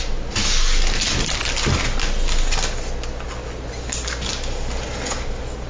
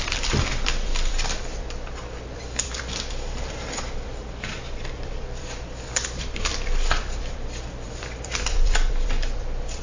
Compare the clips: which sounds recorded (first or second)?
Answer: first